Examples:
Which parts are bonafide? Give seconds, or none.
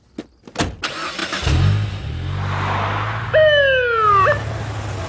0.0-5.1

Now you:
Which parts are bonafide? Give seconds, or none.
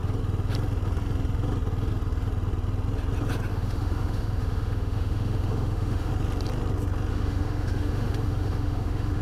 0.0-3.5; 6.1-7.1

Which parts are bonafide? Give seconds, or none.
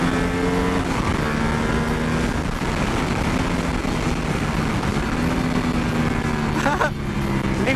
0.0-7.8